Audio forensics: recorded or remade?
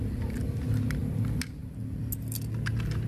recorded